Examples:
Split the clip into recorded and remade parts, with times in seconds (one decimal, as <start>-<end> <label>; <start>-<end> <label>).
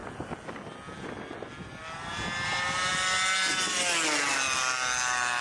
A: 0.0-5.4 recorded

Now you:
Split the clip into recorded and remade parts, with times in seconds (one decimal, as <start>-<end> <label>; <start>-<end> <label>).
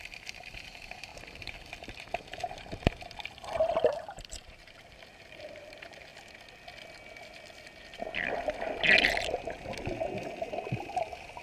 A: 0.0-6.1 remade; 6.1-11.4 recorded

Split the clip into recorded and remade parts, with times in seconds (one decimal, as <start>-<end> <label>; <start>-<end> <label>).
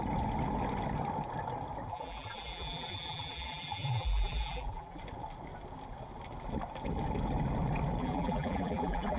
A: 0.0-1.9 recorded; 1.9-5.0 remade; 5.0-8.0 recorded; 8.0-9.2 remade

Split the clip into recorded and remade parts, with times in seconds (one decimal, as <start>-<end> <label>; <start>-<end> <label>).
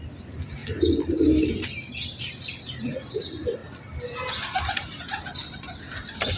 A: 0.0-6.4 recorded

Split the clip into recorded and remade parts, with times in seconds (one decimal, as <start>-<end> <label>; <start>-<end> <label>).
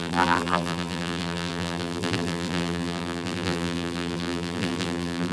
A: 0.0-5.3 remade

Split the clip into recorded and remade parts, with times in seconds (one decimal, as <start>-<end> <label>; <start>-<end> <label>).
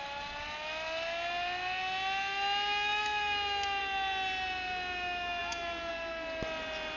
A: 0.0-7.0 recorded